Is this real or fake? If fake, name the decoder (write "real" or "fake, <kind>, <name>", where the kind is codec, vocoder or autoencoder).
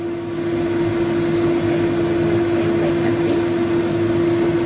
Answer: real